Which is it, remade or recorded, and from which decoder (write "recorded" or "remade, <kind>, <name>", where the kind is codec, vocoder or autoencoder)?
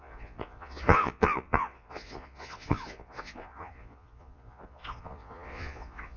remade, vocoder, Vocos